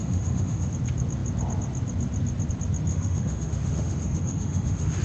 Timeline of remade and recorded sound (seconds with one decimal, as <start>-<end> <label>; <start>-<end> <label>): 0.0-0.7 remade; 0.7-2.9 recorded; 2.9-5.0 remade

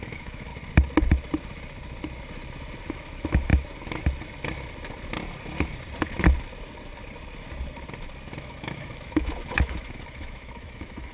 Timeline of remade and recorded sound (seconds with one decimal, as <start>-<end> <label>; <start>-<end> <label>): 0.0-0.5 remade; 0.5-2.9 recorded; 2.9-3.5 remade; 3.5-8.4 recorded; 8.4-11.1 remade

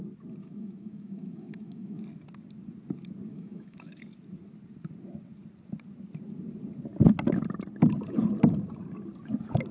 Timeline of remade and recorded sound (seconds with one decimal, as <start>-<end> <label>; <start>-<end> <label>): 0.0-0.4 recorded; 0.4-2.0 remade; 2.0-3.3 recorded; 3.3-4.0 remade; 4.0-9.7 recorded